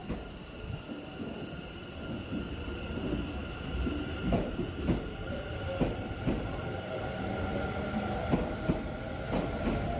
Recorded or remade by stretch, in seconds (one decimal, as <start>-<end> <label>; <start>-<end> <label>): 0.0-3.4 recorded; 3.4-6.6 remade; 6.6-10.0 recorded